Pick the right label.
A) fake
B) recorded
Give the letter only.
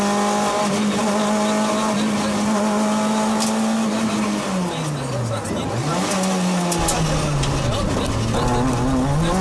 B